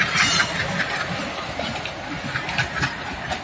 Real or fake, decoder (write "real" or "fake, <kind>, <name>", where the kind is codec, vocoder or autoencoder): real